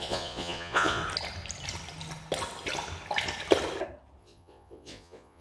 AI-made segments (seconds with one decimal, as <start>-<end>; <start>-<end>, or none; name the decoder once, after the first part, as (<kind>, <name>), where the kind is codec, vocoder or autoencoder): 0.0-1.0 (vocoder, Vocos); 4.2-5.4